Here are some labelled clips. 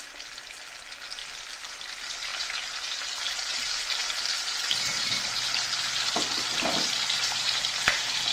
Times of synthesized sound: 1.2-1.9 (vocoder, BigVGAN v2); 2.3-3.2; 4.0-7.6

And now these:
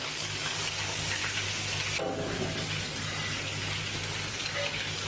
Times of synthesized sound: 0.0-1.2 (codec, DAC); 4.3-5.1

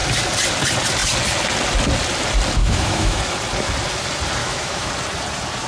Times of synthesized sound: 2.6-3.2 (autoencoder, DAC-VAE); 4.4-4.9